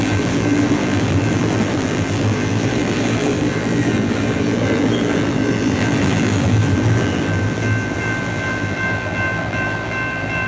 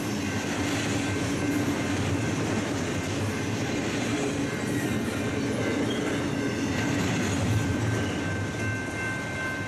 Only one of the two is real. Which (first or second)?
second